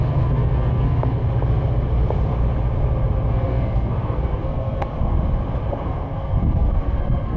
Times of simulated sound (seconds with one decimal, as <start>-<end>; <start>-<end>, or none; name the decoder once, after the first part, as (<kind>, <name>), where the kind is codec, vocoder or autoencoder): 0.0-1.2 (codec, SNAC); 3.3-4.9; 5.7-7.4